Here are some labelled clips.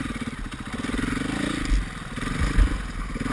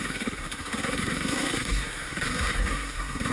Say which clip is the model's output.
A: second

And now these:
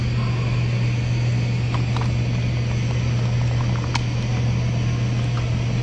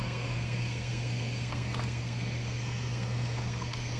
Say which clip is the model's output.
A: second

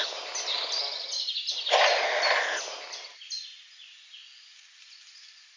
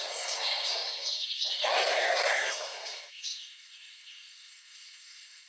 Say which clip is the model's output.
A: second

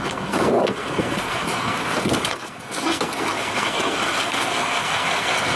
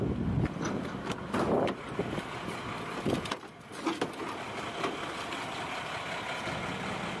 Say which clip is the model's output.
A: first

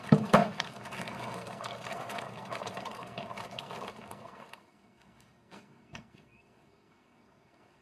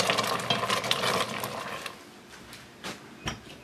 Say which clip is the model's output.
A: first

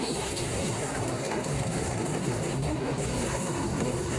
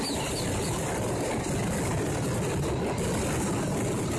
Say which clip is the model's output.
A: first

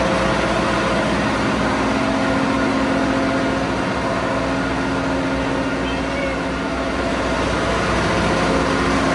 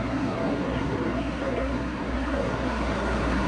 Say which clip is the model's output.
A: second